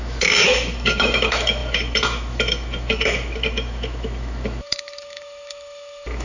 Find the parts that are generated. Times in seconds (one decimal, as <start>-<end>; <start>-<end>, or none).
0.0-6.2

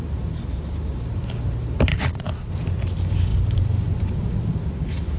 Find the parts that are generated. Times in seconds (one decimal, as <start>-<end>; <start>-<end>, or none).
1.9-2.5